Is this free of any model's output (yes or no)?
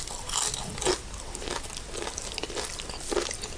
yes